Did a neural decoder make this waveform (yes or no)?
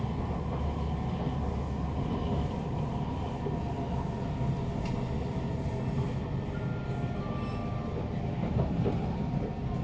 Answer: no